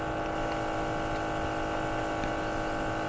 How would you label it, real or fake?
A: real